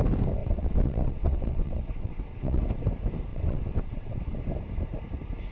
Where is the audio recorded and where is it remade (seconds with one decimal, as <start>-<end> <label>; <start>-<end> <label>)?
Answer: 0.0-0.4 recorded; 0.4-2.6 remade; 2.6-3.3 recorded; 3.3-4.2 remade; 4.2-5.5 recorded